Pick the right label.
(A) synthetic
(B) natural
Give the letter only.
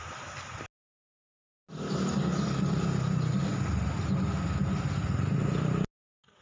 B